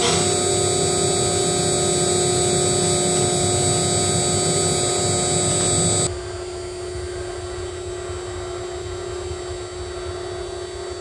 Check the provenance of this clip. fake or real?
real